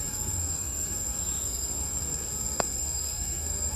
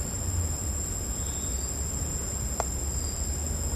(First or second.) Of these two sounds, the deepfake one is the first